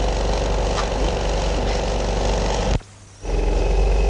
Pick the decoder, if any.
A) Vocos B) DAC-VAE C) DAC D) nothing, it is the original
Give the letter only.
D